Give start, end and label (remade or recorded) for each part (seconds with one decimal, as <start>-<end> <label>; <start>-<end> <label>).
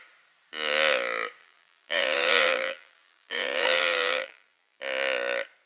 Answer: 0.0-1.4 recorded; 1.4-4.8 remade; 4.8-5.7 recorded